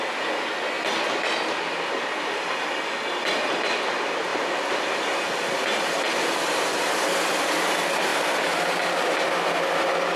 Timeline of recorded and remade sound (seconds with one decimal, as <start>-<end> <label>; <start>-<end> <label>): 0.0-10.2 recorded